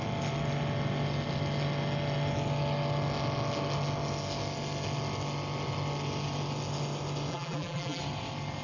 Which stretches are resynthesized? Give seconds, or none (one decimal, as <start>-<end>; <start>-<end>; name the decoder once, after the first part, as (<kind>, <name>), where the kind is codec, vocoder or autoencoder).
7.3-8.0 (vocoder, BigVGAN v2)